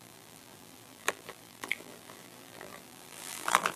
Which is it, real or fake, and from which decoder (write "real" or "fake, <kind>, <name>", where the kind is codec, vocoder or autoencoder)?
fake, vocoder, BigVGAN v2